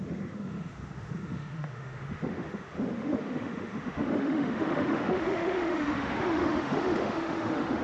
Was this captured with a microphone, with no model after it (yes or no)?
no